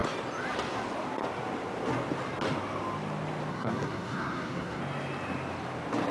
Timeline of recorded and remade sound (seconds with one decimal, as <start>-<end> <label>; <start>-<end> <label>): 0.0-3.5 recorded; 3.5-4.8 remade; 4.8-6.1 recorded